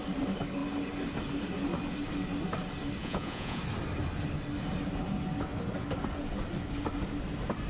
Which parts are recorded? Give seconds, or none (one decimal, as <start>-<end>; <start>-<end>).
0.0-3.0; 3.6-7.7